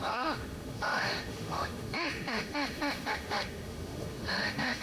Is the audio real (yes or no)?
no